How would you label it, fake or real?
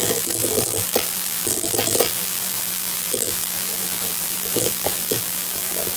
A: fake